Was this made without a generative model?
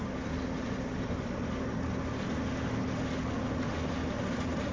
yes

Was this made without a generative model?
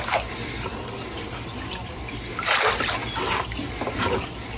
yes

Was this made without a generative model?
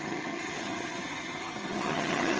no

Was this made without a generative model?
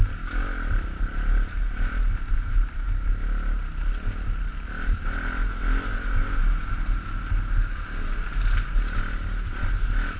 yes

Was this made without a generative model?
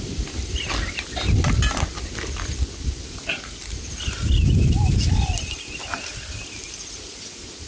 yes